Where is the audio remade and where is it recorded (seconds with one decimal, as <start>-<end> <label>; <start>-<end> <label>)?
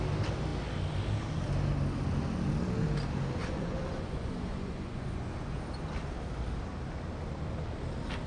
0.0-3.4 recorded; 3.4-5.6 remade; 5.6-8.3 recorded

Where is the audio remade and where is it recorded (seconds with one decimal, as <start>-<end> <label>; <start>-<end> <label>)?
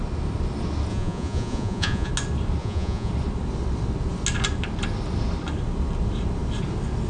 0.0-0.9 recorded; 0.9-2.1 remade; 2.1-2.6 recorded; 2.6-3.1 remade; 3.1-7.1 recorded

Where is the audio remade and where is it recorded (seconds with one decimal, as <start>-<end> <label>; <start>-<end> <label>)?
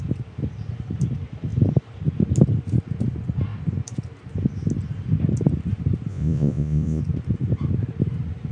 0.0-6.1 recorded; 6.1-7.0 remade; 7.0-8.5 recorded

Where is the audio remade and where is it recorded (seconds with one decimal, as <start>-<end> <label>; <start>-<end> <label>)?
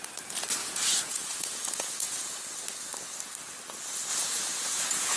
0.0-0.6 recorded; 0.6-2.4 remade; 2.4-4.1 recorded; 4.1-5.2 remade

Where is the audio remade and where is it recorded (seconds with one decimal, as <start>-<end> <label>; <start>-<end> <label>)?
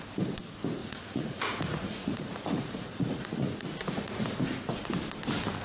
0.0-0.8 recorded; 0.8-4.2 remade; 4.2-5.6 recorded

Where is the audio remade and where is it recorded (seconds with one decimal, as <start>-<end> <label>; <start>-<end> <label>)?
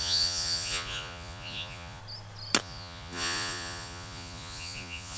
0.0-2.0 remade; 2.0-2.6 recorded; 2.6-5.2 remade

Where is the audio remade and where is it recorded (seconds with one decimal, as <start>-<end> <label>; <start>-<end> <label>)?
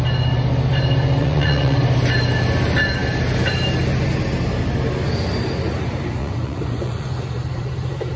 0.0-1.2 recorded; 1.2-1.8 remade; 1.8-6.2 recorded; 6.2-7.2 remade; 7.2-8.2 recorded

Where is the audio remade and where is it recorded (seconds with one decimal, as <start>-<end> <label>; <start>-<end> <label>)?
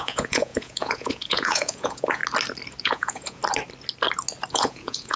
0.0-2.2 remade; 2.2-2.8 recorded; 2.8-3.4 remade; 3.4-4.5 recorded; 4.5-5.2 remade